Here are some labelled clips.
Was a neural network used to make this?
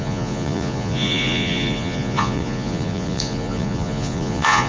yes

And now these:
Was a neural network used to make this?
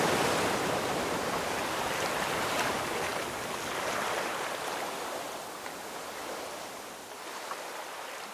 yes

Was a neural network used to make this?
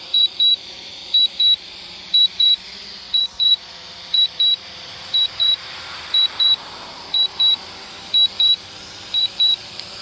yes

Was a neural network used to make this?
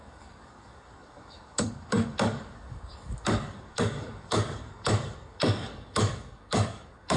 yes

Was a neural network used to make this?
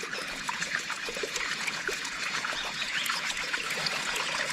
yes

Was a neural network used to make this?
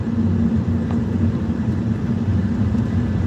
no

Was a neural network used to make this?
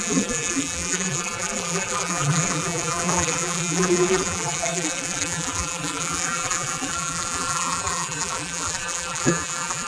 yes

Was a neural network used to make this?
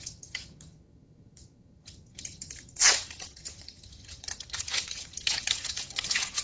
yes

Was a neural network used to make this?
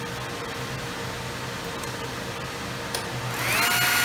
no